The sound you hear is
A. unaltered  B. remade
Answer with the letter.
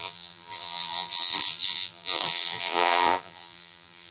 B